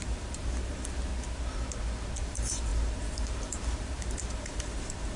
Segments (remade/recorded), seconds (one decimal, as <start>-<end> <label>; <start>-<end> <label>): 0.0-1.1 remade; 1.1-2.2 recorded; 2.2-5.2 remade